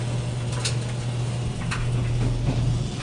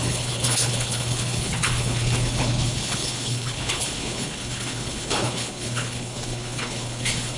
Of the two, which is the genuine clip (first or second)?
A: first